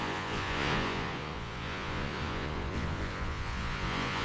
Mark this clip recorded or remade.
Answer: remade